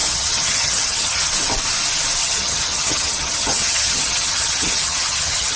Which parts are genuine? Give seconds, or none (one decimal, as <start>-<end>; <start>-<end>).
1.3-2.2